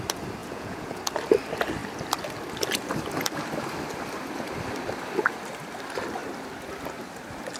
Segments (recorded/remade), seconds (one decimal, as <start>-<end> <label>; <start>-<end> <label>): 0.0-0.4 recorded; 0.4-1.0 remade; 1.0-7.6 recorded